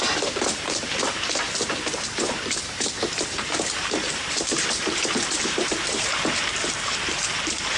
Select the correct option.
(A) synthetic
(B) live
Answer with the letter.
A